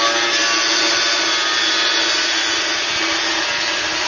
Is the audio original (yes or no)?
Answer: yes